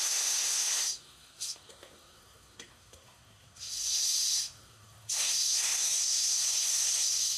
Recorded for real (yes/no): no